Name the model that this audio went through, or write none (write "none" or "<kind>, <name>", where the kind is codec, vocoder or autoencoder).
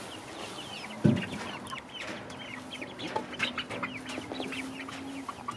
none